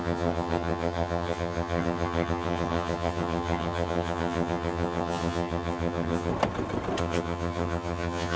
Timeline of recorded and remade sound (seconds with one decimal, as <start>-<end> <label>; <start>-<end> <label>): 0.0-6.3 remade; 6.3-7.0 recorded; 7.0-8.4 remade